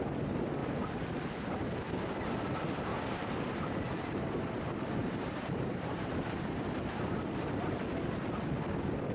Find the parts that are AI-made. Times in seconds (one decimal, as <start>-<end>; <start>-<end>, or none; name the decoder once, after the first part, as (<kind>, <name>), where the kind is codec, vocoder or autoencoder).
0.6-1.5 (vocoder, BigVGAN v2); 2.9-4.4; 5.0-7.2